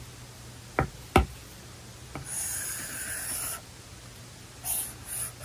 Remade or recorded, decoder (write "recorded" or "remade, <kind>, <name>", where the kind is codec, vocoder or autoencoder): recorded